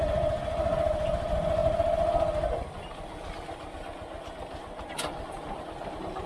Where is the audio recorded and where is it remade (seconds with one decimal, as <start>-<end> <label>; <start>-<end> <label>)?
0.0-6.3 recorded